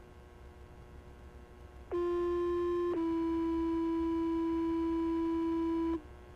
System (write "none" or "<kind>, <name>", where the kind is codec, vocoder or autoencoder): none